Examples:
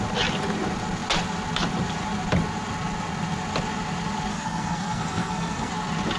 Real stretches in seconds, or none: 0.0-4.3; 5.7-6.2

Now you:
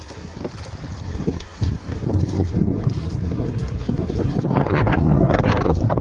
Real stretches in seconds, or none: 0.4-1.0

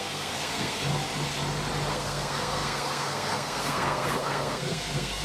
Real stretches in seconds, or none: 0.9-1.9

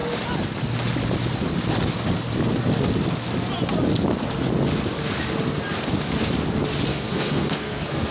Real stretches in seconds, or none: 0.0-6.9

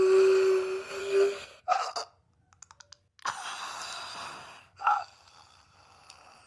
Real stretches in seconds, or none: 0.0-1.0; 1.9-4.6; 5.3-6.5

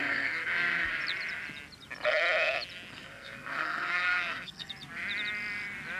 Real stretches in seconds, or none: 0.9-2.9; 4.7-6.0

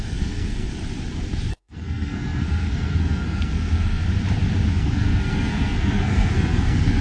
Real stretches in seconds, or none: 0.7-1.5; 4.0-4.7